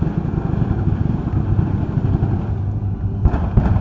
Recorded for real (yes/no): yes